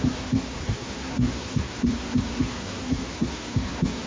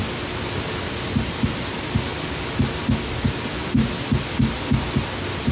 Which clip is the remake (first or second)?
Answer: first